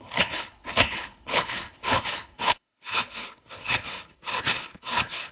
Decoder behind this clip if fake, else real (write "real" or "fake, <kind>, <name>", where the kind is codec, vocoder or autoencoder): fake, codec, HILCodec